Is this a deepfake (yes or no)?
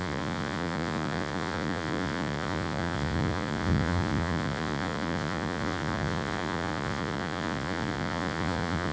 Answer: yes